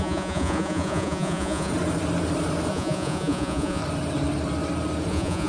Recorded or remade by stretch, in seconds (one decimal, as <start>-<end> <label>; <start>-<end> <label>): 0.0-1.7 remade; 1.7-2.7 recorded; 2.7-3.8 remade; 3.8-5.1 recorded; 5.1-5.5 remade